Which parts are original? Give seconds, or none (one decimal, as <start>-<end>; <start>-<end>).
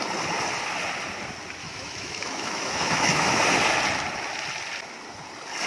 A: 0.0-1.6; 3.4-5.7